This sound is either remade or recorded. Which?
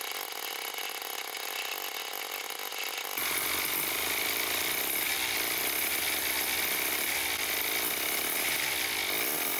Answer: recorded